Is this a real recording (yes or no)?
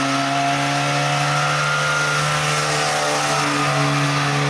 yes